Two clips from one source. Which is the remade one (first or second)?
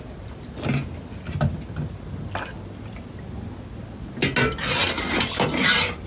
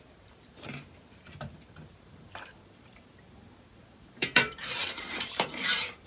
second